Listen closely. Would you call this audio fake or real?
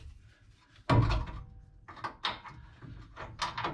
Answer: real